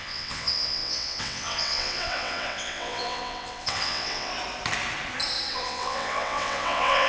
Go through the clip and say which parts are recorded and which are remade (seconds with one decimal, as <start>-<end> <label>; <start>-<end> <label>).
0.0-4.3 remade; 4.3-5.5 recorded; 5.5-7.1 remade